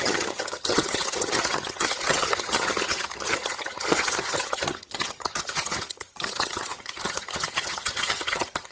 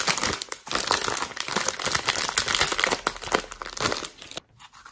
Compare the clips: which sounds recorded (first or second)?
second